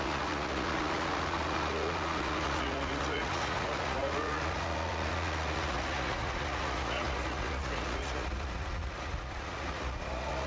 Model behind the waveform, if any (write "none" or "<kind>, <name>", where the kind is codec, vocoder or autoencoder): vocoder, Vocos